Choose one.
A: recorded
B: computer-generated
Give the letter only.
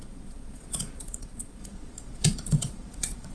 B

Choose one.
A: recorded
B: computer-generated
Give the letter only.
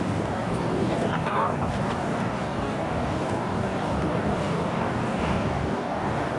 B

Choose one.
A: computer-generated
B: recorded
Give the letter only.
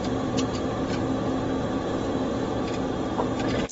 B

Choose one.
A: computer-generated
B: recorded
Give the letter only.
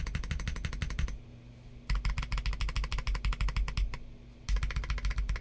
B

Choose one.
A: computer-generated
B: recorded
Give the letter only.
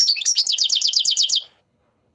A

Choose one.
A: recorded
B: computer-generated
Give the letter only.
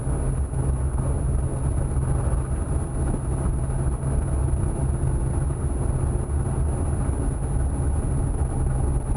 A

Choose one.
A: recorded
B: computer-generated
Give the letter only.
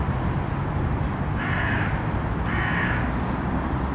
A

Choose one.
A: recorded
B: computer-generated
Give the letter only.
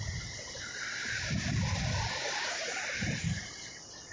B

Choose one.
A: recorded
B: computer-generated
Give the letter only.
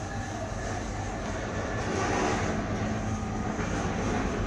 A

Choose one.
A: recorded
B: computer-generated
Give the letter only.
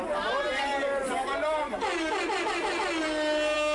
A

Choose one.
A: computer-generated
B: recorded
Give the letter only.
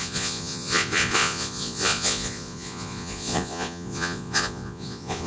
A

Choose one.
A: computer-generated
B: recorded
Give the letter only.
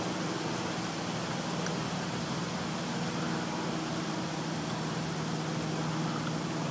B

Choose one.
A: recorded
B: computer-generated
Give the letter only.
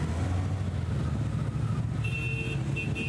A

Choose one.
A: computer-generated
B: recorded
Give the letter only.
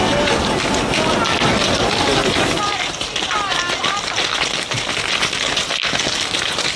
B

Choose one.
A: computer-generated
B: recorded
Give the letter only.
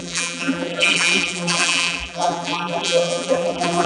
A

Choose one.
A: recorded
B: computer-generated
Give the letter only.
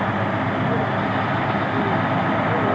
A